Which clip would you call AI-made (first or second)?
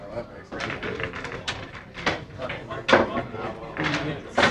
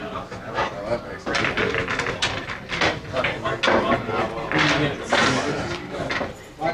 first